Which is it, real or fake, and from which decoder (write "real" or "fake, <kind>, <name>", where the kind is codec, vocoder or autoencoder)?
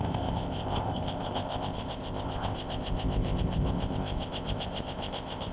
fake, codec, ZipCodec